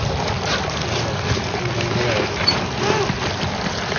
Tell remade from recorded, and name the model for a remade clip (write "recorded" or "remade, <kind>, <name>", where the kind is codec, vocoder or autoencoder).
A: recorded